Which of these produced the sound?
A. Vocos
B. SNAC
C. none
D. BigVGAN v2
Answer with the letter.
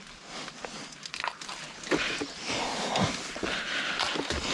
C